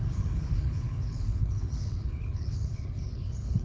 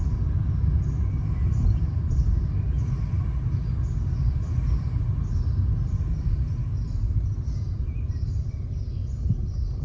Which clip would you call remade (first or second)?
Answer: first